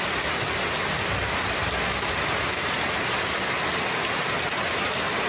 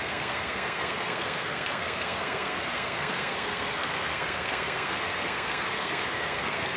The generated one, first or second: second